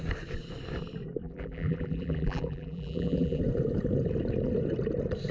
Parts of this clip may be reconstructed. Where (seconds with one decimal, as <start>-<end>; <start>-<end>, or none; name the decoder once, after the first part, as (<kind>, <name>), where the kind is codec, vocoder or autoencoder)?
1.2-3.4 (vocoder, BigVGAN v2)